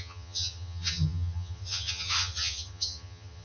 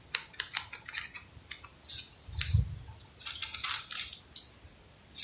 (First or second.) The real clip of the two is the second